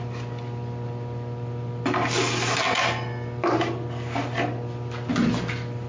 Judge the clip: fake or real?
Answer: fake